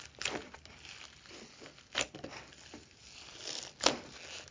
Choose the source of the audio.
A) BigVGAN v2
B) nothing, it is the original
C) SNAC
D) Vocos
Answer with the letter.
B